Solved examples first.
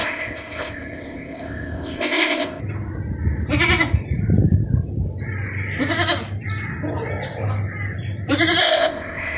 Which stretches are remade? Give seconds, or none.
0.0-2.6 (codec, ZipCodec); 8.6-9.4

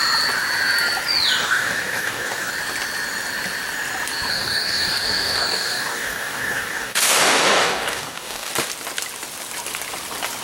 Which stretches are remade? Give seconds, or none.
1.4-2.5 (codec, DAC); 4.3-8.5

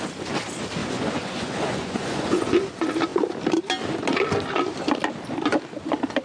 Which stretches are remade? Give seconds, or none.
0.8-2.5 (vocoder, Vocos)

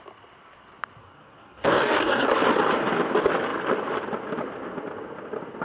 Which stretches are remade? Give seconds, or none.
1.0-2.3 (codec, DAC)

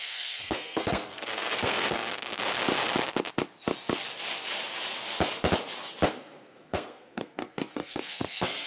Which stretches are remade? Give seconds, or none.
0.0-2.4 (codec, SNAC); 6.1-8.7

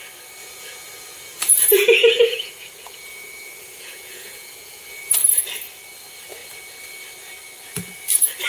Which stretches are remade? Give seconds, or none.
0.4-5.4 (vocoder, Vocos)